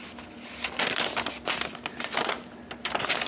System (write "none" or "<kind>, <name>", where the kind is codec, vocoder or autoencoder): none